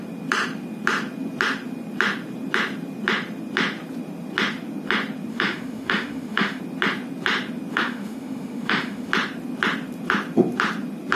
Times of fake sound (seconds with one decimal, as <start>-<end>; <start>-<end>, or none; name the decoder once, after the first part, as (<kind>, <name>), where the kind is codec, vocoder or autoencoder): 5.3-6.6 (autoencoder, DAC-VAE); 7.7-9.1